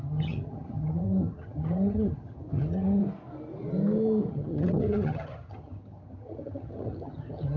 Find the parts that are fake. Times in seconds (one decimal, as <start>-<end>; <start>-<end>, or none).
0.0-3.0; 4.3-7.6